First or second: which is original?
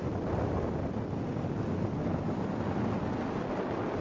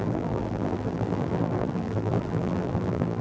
first